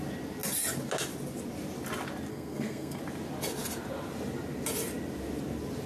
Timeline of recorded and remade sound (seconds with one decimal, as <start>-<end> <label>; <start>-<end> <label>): 0.0-2.3 recorded; 2.3-3.0 remade; 3.0-5.9 recorded